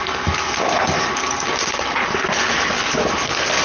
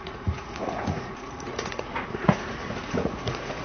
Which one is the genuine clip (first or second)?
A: first